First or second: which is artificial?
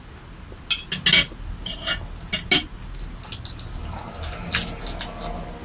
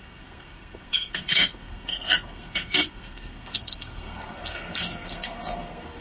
second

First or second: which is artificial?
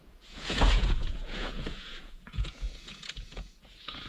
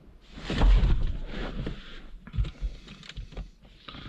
first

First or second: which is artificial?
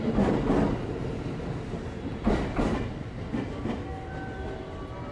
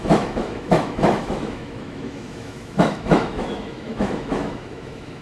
second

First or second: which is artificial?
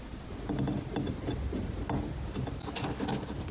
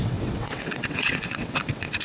second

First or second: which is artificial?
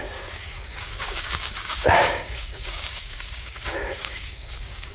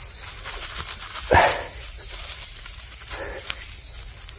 first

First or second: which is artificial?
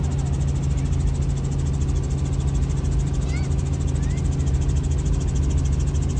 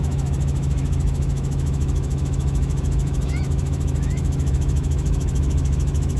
second